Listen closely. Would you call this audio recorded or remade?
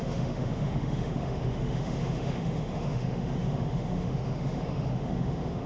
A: remade